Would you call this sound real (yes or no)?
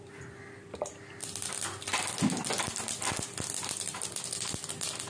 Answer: yes